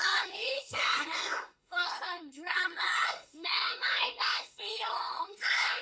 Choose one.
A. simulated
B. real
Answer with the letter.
A